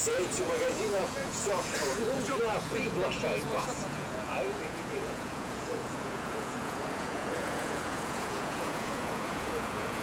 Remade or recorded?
remade